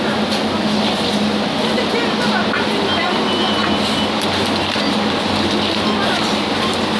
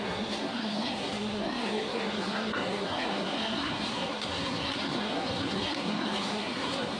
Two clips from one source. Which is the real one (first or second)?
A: first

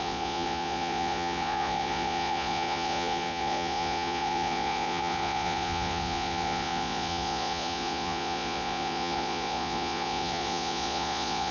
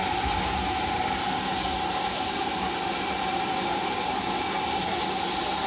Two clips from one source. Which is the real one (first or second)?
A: second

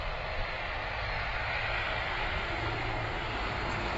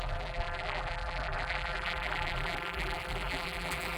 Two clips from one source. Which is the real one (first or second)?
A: first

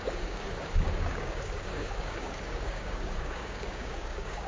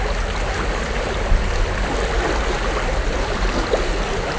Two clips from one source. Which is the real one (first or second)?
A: second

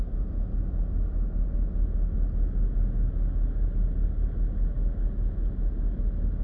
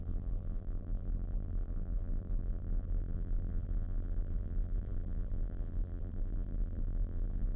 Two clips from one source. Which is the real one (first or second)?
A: first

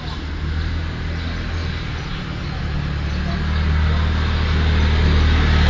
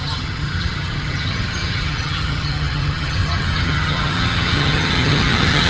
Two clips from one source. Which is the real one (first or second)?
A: first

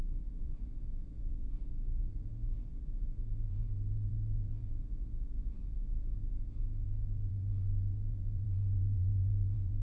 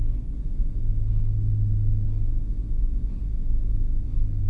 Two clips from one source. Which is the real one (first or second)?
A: second